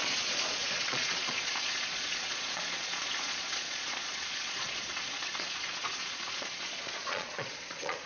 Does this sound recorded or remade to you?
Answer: remade